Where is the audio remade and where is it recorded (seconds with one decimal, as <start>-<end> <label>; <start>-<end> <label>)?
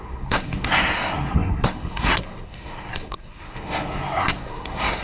0.0-5.0 remade